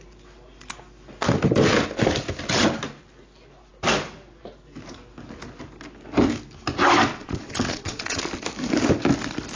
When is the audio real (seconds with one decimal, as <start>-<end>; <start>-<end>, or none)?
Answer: 0.0-7.1; 8.2-9.6